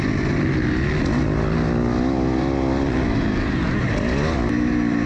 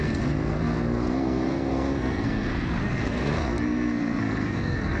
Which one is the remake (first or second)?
second